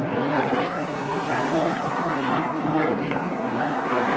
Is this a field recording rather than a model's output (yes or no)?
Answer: no